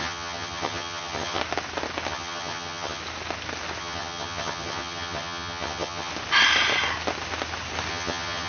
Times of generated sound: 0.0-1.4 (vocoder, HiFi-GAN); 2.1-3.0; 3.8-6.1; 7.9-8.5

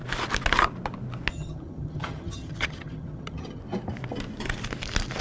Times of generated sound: 1.3-3.6 (vocoder, HiFi-GAN)

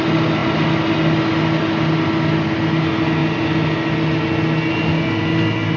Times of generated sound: none

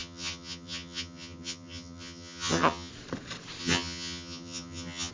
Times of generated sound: 0.0-2.9 (vocoder, HiFi-GAN); 3.6-5.1

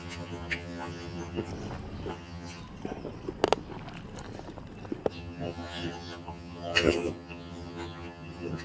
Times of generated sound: 0.0-1.5 (vocoder, HiFi-GAN); 2.1-2.6; 5.1-8.6

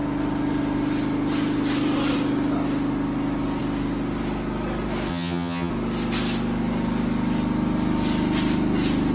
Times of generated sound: 5.1-5.7 (vocoder, HiFi-GAN)

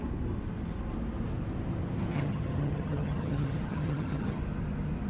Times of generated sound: 2.1-4.4 (vocoder, HiFi-GAN)

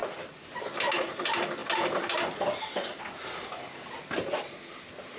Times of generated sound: none